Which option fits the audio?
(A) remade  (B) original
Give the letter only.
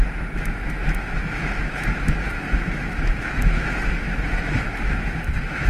A